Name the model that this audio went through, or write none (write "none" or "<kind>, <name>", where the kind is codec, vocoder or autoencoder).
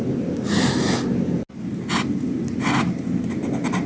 none